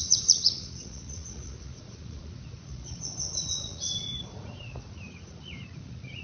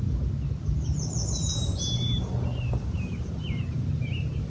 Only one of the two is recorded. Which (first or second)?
second